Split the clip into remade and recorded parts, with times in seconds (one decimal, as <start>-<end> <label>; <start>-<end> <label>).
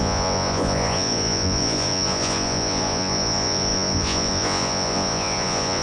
0.0-5.8 remade